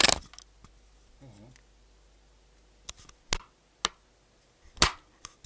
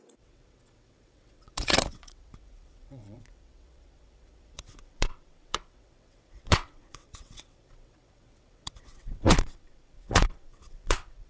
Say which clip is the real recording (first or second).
first